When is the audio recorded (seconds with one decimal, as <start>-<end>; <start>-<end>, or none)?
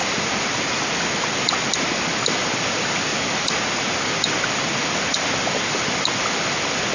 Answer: 0.0-6.9